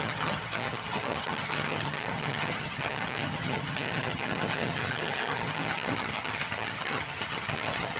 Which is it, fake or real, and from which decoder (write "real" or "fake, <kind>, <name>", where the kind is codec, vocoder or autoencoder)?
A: fake, vocoder, HiFi-GAN